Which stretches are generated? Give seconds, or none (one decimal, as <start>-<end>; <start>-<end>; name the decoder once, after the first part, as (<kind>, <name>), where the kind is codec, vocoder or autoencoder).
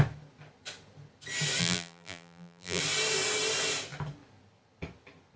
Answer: 1.6-2.8 (vocoder, BigVGAN v2)